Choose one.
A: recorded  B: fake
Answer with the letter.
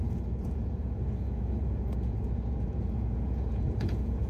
B